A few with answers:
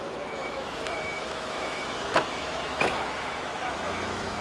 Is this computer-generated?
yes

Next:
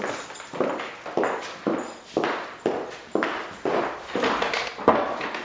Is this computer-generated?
no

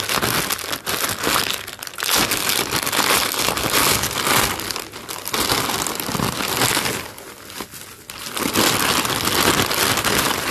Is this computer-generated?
no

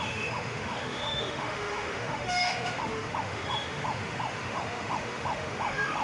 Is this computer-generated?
yes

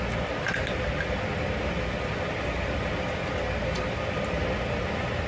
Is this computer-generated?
no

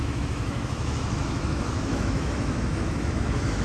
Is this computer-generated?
yes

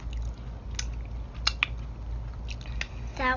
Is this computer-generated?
no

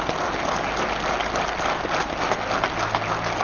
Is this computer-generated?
no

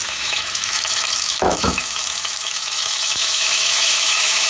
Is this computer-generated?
yes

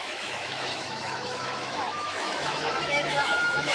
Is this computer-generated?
yes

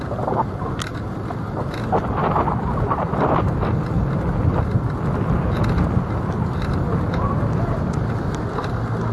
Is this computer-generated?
no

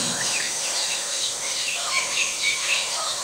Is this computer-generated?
yes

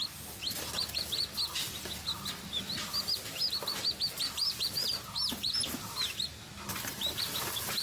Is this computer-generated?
no